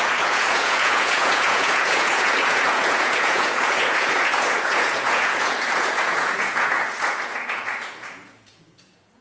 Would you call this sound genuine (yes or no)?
no